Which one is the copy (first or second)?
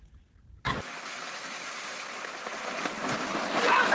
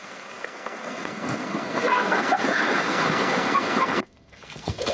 second